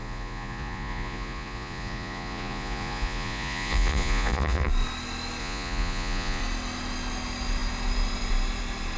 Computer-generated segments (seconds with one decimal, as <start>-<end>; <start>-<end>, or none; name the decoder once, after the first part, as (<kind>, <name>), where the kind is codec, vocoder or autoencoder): 0.0-4.7 (vocoder, Vocos); 5.4-6.4